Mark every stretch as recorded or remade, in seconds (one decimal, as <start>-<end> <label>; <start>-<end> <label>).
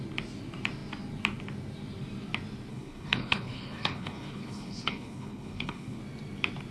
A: 0.0-2.7 recorded; 2.7-6.0 remade; 6.0-6.7 recorded